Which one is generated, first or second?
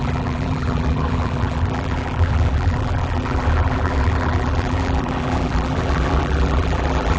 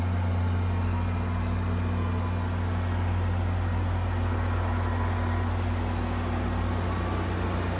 first